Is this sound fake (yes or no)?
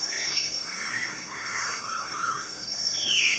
yes